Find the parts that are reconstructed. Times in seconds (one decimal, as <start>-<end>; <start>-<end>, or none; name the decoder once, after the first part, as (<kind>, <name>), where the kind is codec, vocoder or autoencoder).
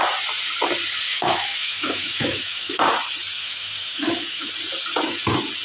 1.1-2.8 (autoencoder, DAC-VAE); 3.4-4.5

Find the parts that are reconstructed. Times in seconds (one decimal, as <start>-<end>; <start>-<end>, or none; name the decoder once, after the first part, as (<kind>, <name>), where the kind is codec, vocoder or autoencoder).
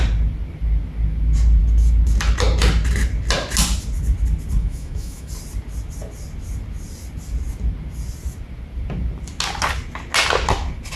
4.6-5.3 (autoencoder, DAC-VAE)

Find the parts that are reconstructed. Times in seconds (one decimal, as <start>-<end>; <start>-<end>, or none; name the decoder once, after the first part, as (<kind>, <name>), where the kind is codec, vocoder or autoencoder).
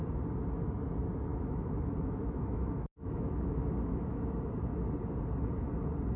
1.3-4.7 (autoencoder, DAC-VAE)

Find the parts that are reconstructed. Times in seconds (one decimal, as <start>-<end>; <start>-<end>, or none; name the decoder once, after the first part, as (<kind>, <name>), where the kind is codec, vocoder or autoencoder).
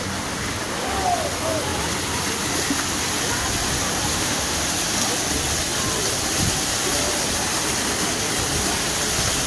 4.1-4.6 (autoencoder, DAC-VAE)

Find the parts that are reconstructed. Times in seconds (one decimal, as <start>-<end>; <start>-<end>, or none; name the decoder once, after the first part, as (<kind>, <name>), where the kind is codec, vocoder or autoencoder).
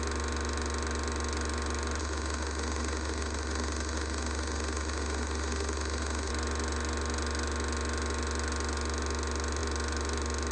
2.0-6.3 (autoencoder, DAC-VAE)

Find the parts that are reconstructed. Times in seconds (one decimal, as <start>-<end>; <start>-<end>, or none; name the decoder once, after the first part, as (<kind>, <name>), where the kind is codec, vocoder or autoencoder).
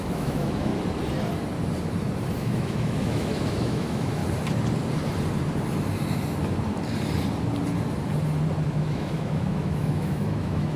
0.0-0.7 (autoencoder, DAC-VAE); 2.4-4.2; 8.7-10.8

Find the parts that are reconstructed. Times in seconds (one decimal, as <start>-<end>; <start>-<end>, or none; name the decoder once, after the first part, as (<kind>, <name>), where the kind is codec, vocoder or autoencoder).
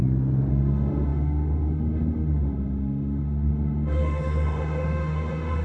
0.5-5.6 (autoencoder, DAC-VAE)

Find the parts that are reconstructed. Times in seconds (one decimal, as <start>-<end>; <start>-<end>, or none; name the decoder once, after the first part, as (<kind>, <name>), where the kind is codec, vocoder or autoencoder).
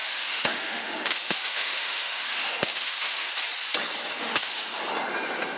0.0-3.3 (autoencoder, DAC-VAE); 4.2-4.8